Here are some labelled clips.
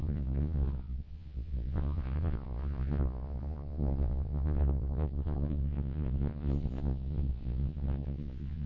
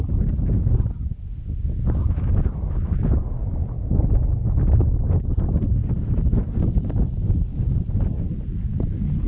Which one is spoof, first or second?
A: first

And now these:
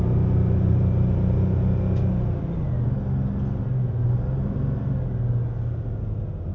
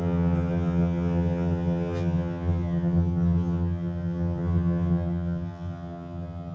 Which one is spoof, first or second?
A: second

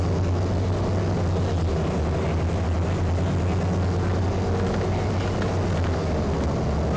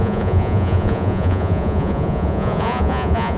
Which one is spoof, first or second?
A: second